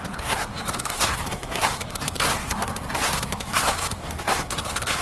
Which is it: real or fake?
fake